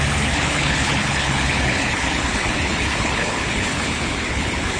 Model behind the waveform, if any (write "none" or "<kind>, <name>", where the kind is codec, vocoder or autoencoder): codec, HILCodec